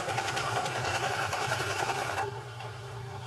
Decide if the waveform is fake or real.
fake